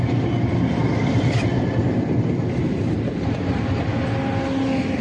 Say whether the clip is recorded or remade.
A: recorded